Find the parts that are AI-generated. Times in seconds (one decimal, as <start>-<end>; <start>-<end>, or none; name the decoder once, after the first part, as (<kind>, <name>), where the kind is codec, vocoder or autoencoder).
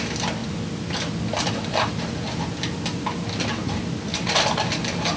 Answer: none